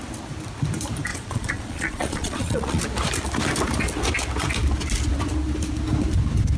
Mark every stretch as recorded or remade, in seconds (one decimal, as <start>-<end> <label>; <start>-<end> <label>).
0.0-1.1 recorded; 1.1-2.8 remade; 2.8-6.6 recorded